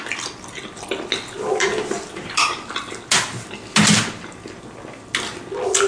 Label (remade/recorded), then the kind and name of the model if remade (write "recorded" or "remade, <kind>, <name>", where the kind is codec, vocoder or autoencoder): recorded